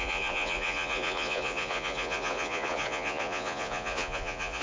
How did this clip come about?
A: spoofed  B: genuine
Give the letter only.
A